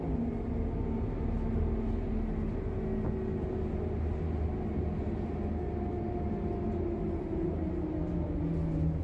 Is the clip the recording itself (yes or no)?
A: yes